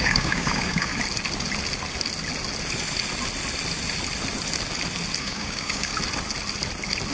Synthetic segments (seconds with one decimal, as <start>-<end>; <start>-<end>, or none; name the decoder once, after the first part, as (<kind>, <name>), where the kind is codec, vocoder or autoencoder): 0.0-0.9 (codec, DAC); 5.2-5.9